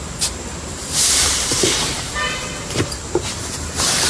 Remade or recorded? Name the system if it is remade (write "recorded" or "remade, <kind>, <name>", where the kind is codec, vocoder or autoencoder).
remade, vocoder, BigVGAN v2